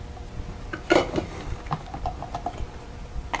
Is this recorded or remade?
recorded